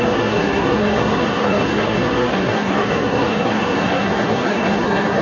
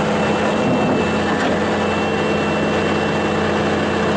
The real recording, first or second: second